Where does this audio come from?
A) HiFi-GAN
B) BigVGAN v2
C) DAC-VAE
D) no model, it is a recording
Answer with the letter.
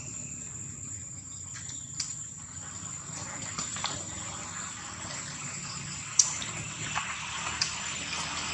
D